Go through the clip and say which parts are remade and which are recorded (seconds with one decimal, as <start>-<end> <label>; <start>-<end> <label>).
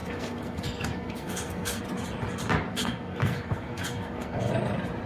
0.0-1.8 remade; 1.8-2.7 recorded; 2.7-4.5 remade; 4.5-5.1 recorded